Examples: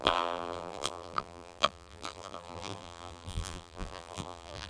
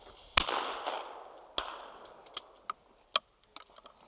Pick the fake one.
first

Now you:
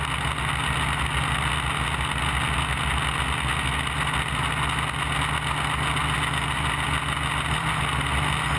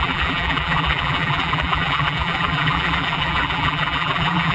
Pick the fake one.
second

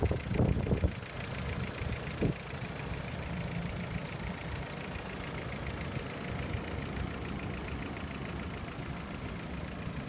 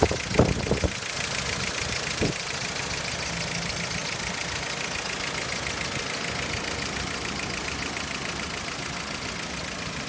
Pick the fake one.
first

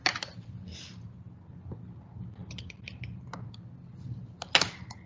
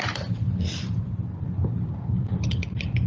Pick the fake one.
second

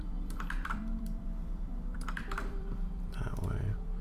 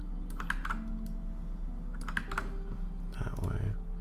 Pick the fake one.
first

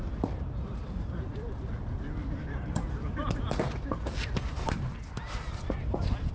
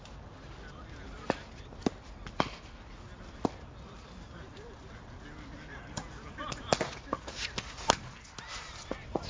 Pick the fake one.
first